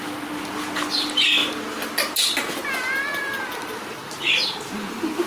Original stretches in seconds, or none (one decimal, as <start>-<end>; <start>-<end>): 0.0-5.3